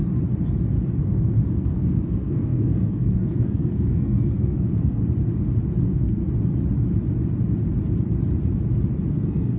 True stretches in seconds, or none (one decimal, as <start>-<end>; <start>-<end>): 0.0-1.0; 5.0-5.8; 6.2-9.1